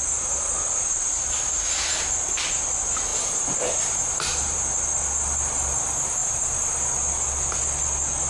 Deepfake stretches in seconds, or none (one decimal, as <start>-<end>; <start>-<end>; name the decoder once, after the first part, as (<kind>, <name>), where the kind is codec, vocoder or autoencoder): 3.1-4.6 (vocoder, BigVGAN v2)